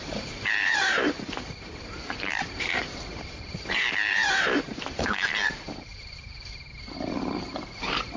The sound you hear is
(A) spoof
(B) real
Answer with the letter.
A